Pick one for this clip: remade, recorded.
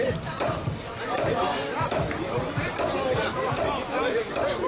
remade